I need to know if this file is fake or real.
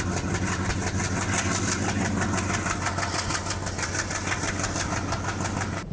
real